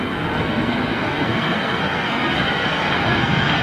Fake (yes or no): yes